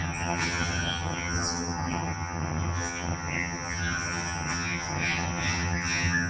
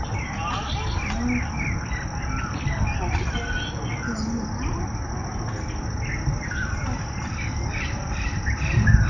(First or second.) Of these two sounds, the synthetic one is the first